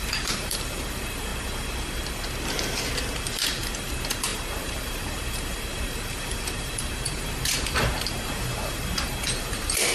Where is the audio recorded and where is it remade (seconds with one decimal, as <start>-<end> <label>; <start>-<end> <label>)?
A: 0.0-1.3 remade; 1.3-3.3 recorded; 3.3-9.9 remade